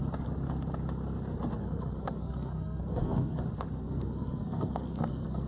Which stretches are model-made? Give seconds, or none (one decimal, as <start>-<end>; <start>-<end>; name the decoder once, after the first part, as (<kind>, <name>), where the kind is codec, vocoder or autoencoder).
1.6-3.4 (codec, SNAC); 3.8-5.5